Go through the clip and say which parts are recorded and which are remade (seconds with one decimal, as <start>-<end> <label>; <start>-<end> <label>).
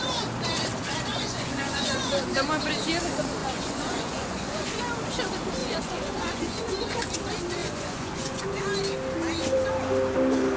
0.0-1.1 recorded; 1.1-2.1 remade; 2.1-3.4 recorded; 3.4-4.8 remade; 4.8-5.6 recorded; 5.6-7.0 remade; 7.0-7.6 recorded; 7.6-8.6 remade; 8.6-10.6 recorded